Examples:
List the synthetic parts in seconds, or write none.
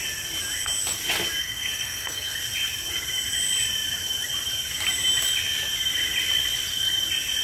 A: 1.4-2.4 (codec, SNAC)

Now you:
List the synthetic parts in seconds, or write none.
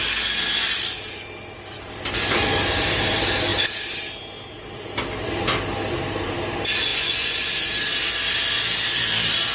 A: 6.9-7.7 (vocoder, Vocos)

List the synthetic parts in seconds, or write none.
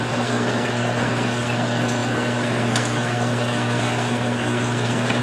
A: 0.0-5.2 (codec, SNAC)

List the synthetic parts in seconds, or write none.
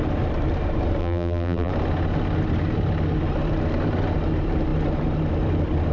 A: 1.0-1.7 (vocoder, BigVGAN v2)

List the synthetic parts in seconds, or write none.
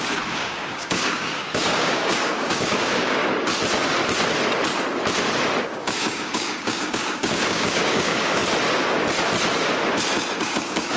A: 0.0-3.2 (codec, DAC); 5.6-8.4; 10.4-11.0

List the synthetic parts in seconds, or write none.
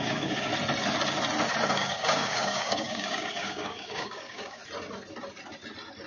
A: 0.0-0.5 (codec, DAC); 1.7-4.6